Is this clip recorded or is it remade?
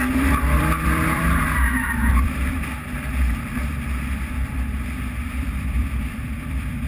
remade